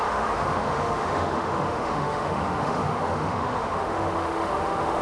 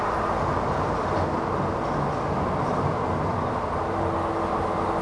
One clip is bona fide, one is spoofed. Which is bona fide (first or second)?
second